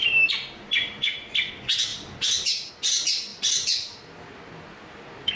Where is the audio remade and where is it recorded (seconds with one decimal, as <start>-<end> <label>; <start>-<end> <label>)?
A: 0.0-1.5 remade; 1.5-1.9 recorded; 1.9-2.7 remade; 2.7-5.4 recorded

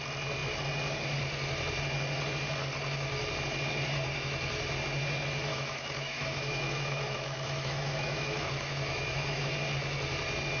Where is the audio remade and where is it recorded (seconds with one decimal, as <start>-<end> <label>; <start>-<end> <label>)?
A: 0.0-5.5 recorded; 5.5-9.5 remade; 9.5-10.6 recorded

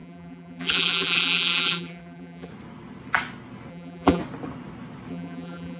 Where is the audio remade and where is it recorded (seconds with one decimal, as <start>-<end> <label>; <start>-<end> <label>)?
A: 0.0-2.5 remade; 2.5-3.7 recorded; 3.7-4.2 remade; 4.2-5.1 recorded; 5.1-5.8 remade

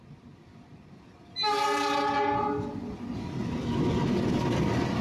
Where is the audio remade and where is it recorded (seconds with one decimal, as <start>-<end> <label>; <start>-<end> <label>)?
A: 0.0-5.0 recorded

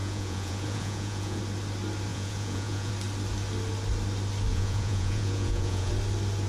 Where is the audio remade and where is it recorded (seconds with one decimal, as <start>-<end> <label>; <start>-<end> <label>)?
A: 0.0-1.4 remade; 1.4-2.1 recorded; 2.1-2.9 remade; 2.9-4.5 recorded; 4.5-5.9 remade; 5.9-6.5 recorded